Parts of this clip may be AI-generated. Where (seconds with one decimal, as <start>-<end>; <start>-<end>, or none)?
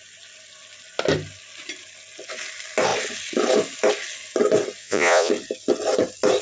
4.8-5.3